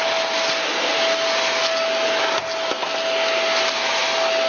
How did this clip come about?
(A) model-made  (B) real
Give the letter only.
B